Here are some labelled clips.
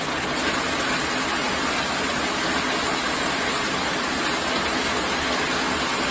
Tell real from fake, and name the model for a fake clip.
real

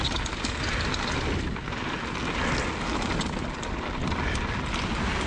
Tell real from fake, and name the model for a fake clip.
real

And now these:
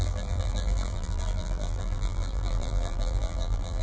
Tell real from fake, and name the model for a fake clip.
fake, vocoder, BigVGAN v2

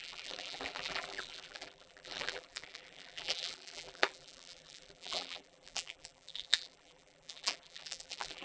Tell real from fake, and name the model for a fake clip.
fake, vocoder, BigVGAN v2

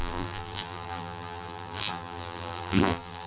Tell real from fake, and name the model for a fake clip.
fake, vocoder, BigVGAN v2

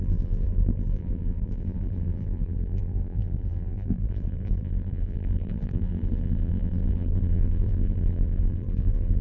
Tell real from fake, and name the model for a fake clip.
fake, vocoder, BigVGAN v2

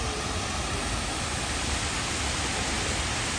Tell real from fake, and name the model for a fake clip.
real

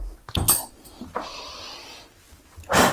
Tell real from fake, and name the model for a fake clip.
real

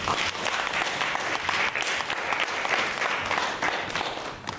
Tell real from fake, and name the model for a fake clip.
real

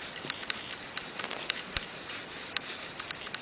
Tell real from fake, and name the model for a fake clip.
fake, vocoder, BigVGAN v2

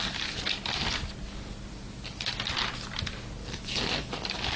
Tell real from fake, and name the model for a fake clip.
real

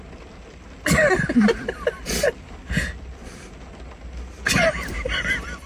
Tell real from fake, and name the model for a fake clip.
real